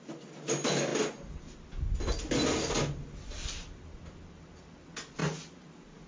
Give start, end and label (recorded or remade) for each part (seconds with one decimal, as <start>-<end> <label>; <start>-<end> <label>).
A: 0.0-6.1 recorded

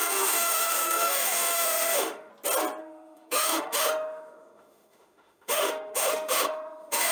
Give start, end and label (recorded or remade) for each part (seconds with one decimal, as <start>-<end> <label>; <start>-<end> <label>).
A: 0.0-2.3 remade; 2.3-2.8 recorded; 2.8-7.1 remade